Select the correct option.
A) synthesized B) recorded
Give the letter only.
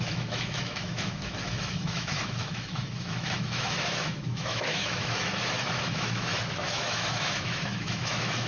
A